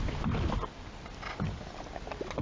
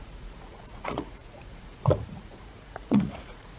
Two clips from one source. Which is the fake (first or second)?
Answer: second